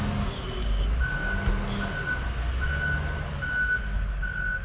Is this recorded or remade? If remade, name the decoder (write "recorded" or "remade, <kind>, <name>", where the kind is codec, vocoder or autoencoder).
recorded